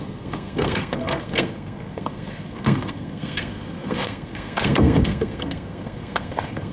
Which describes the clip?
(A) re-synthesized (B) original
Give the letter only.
A